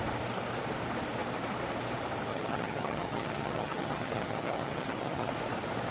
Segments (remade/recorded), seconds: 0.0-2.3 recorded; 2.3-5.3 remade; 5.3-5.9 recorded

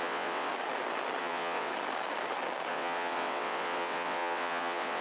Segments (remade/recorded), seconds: 0.0-0.5 remade; 0.5-1.2 recorded; 1.2-1.7 remade; 1.7-2.7 recorded; 2.7-5.0 remade

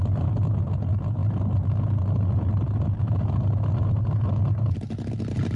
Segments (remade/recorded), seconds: 0.0-5.6 recorded

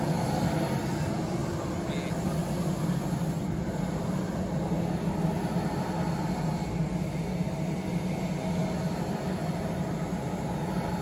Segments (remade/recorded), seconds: 0.0-11.0 recorded

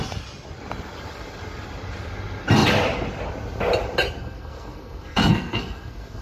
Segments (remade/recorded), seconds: 0.0-4.2 recorded; 4.2-6.2 remade